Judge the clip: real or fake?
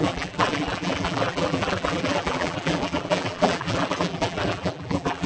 fake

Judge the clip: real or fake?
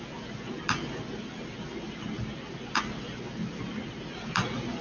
real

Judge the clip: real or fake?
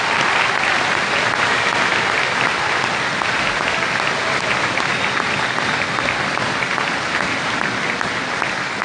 real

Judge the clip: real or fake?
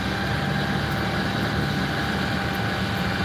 real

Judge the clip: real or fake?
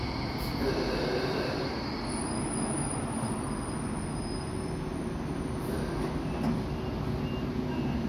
real